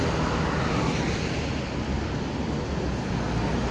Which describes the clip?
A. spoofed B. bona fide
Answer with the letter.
B